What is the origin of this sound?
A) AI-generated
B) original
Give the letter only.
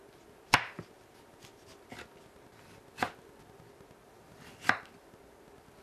B